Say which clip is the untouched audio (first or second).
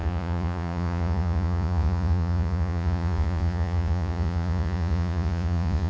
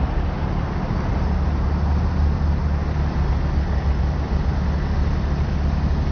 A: second